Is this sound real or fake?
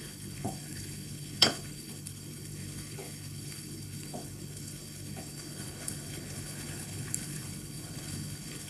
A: fake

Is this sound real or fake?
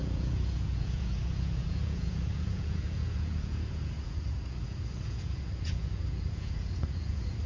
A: fake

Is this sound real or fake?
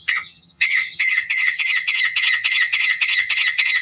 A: fake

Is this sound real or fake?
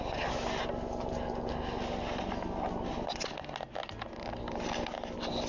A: real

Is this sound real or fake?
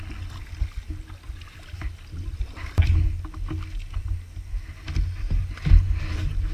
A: real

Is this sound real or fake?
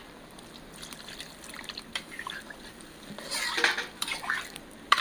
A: fake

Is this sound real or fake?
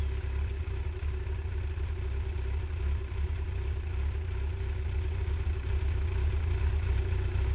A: real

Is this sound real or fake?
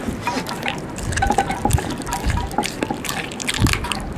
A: real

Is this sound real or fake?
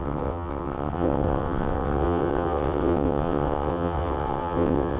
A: fake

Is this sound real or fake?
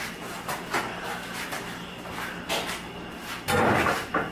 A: real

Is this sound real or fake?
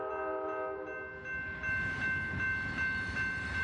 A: real